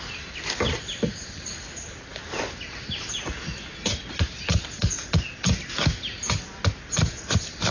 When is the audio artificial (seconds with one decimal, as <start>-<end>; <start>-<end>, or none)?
none